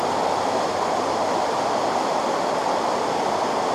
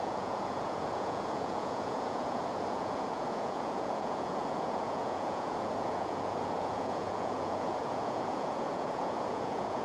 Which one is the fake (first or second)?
second